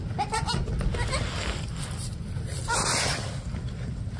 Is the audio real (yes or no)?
yes